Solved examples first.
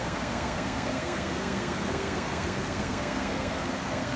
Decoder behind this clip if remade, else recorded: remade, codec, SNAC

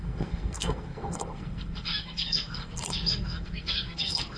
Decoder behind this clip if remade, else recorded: remade, codec, SNAC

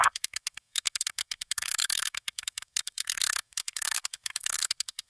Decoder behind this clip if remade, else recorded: remade, codec, SNAC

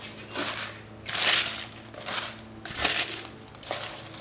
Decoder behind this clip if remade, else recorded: recorded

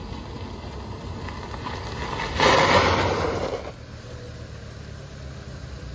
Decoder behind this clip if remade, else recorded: recorded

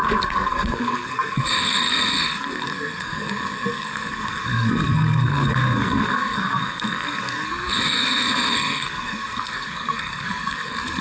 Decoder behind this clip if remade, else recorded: remade, codec, SNAC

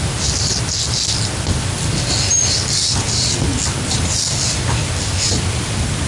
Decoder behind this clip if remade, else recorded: recorded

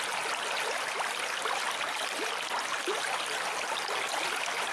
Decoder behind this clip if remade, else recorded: recorded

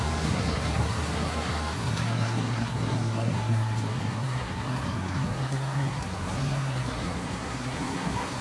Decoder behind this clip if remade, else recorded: remade, codec, SNAC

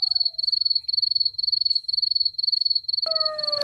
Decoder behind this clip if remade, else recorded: recorded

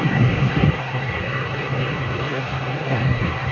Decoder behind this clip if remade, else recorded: remade, codec, SNAC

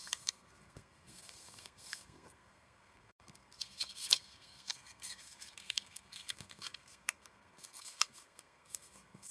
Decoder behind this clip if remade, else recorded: remade, codec, SNAC